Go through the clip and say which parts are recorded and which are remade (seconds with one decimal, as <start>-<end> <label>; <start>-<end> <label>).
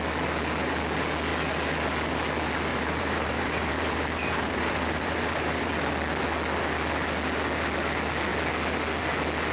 0.0-2.7 recorded; 2.7-5.7 remade; 5.7-9.5 recorded